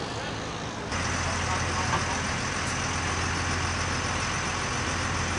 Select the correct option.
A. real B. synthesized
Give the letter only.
A